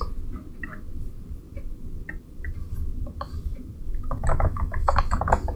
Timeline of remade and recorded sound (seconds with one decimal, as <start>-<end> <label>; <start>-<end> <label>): 0.0-4.3 recorded; 4.3-5.0 remade; 5.0-5.6 recorded